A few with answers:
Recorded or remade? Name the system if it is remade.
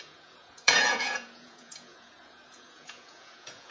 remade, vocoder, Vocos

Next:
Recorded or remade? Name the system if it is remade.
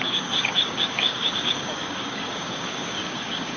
remade, codec, DAC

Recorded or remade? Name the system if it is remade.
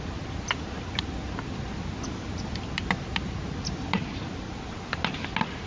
recorded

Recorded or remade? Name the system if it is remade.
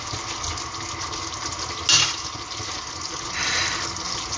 recorded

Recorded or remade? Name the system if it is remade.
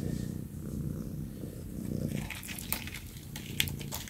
recorded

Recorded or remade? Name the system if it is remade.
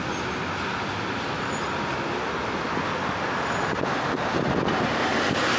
recorded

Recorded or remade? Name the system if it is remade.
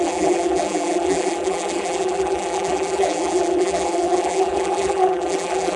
remade, vocoder, BigVGAN v2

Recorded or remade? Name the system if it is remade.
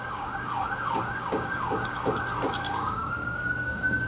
remade, codec, DAC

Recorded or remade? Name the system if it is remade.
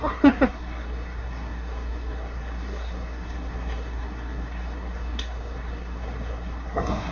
remade, codec, SNAC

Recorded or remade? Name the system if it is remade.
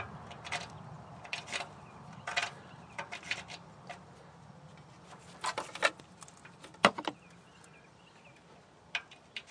recorded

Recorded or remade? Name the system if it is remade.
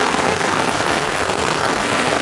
remade, codec, SNAC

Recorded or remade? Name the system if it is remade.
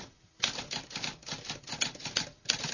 recorded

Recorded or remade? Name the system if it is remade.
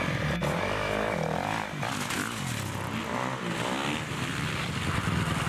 recorded